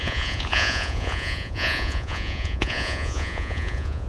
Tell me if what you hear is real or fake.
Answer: fake